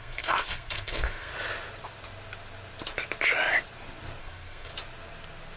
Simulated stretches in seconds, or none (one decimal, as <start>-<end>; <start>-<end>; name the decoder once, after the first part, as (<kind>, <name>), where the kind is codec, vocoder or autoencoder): 0.0-1.3 (codec, SNAC); 4.2-4.7